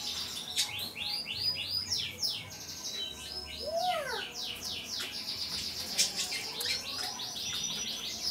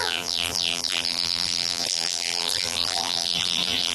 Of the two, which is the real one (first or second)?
first